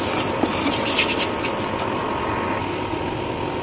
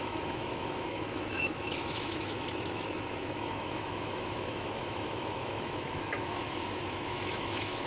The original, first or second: first